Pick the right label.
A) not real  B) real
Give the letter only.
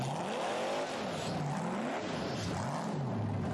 B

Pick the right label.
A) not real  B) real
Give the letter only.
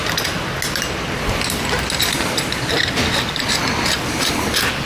B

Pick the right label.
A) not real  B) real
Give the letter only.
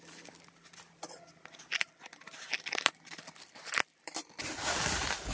A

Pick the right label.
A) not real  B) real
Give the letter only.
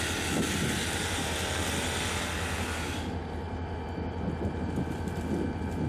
B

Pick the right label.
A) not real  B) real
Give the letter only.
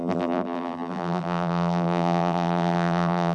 A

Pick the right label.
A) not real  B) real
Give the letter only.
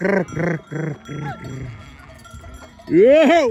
B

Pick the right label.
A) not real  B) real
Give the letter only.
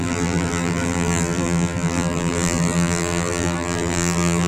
A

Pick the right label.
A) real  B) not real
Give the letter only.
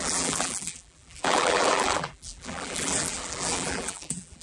B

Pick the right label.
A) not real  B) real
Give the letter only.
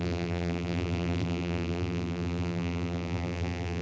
A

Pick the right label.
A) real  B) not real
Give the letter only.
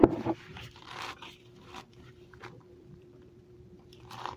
B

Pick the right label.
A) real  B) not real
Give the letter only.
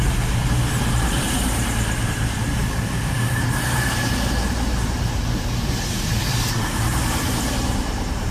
B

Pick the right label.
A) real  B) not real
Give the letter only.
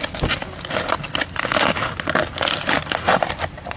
A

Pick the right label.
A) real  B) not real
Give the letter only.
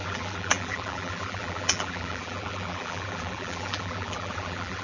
B